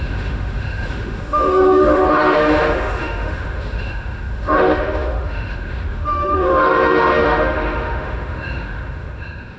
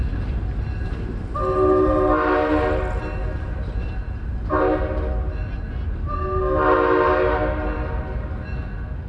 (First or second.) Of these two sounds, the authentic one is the second